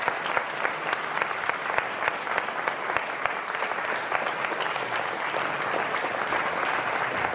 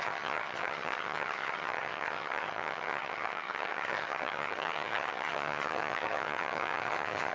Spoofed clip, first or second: second